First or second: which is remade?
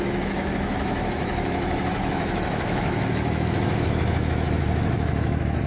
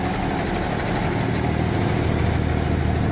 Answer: first